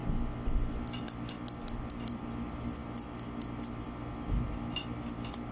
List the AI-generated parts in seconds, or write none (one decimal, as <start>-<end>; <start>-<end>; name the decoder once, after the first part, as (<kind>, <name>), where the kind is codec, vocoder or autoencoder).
none